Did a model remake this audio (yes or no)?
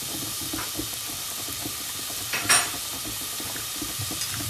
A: no